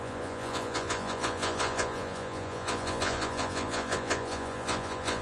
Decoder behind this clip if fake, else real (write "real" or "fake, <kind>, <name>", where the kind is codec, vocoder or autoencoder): fake, vocoder, Vocos